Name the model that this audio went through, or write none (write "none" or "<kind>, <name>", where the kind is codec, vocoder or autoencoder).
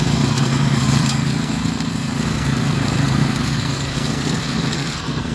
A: codec, SNAC